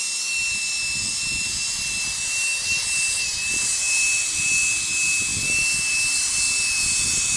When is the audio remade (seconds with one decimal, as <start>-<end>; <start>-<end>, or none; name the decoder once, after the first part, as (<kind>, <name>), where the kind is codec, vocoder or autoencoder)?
none